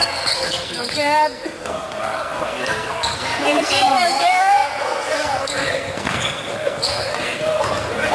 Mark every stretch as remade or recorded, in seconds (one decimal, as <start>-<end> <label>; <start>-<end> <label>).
0.0-8.1 remade